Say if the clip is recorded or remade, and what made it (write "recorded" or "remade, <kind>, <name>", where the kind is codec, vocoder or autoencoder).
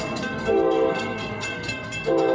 remade, codec, SNAC